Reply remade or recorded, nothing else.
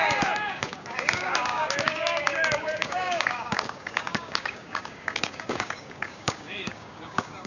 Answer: remade